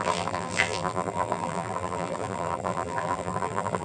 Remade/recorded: remade